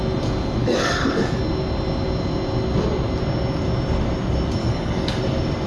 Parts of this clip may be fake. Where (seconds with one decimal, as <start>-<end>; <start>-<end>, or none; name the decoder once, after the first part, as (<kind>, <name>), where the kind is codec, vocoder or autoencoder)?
0.6-1.4 (codec, DAC); 4.6-5.2